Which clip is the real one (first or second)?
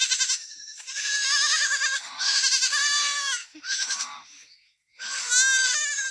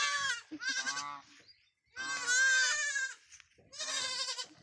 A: second